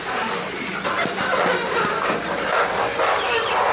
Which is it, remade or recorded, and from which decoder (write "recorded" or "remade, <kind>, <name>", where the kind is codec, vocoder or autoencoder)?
recorded